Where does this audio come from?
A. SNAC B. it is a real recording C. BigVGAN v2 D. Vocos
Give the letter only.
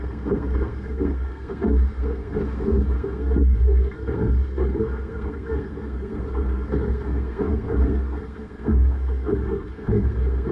A